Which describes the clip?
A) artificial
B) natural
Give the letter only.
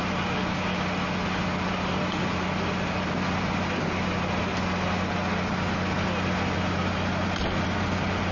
B